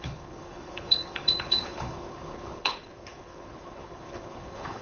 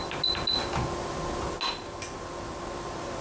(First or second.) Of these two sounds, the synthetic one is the first